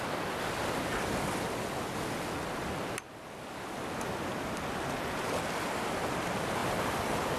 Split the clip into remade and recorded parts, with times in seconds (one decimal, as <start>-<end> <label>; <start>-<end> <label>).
0.0-7.4 recorded